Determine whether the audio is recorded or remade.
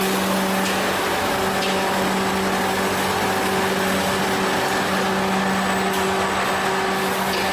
recorded